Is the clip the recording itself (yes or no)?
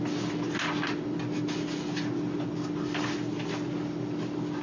yes